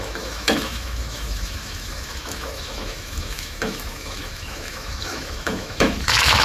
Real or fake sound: fake